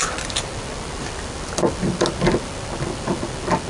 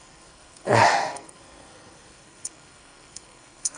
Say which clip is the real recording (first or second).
first